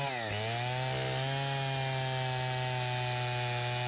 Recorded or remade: recorded